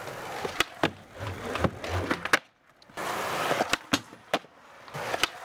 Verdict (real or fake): real